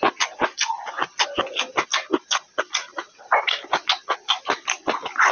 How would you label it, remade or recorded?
recorded